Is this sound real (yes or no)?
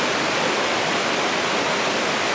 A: yes